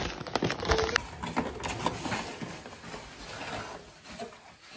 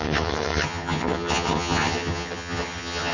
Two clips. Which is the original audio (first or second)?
first